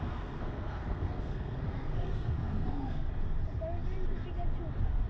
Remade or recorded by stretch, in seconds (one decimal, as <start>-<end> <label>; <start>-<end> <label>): 0.0-3.1 remade; 3.1-5.1 recorded